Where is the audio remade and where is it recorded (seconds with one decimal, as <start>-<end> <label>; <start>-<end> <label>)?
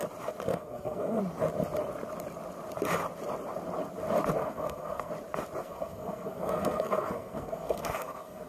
0.0-0.5 recorded; 0.5-1.2 remade; 1.2-4.4 recorded; 4.4-5.1 remade; 5.1-5.6 recorded; 5.6-8.5 remade